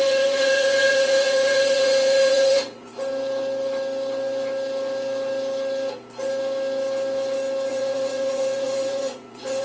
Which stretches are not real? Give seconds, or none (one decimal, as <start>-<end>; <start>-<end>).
0.0-2.9; 7.7-9.6